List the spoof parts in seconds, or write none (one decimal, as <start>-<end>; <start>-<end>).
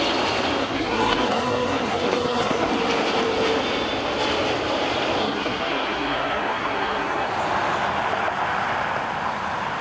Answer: 0.6-2.7; 5.2-7.3